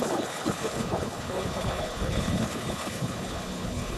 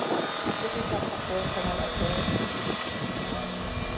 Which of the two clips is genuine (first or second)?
second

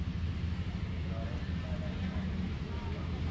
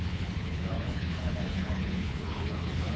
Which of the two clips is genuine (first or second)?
first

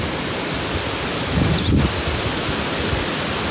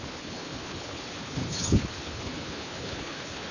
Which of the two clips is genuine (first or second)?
first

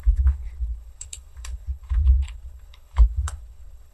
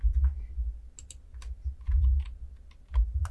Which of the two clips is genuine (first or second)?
second